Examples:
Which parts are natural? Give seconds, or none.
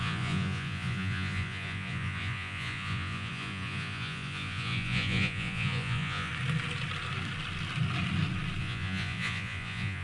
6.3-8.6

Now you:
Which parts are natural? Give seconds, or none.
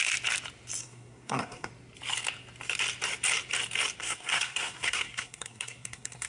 0.0-0.8; 1.7-4.0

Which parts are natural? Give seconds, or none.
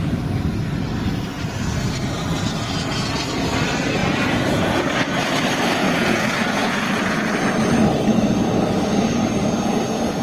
0.0-4.0; 4.8-5.8; 7.3-10.2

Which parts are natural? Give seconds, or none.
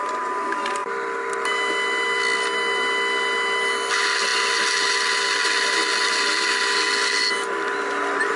0.0-8.4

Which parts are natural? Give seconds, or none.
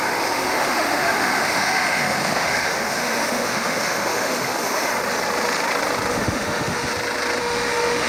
4.9-6.1; 6.9-7.4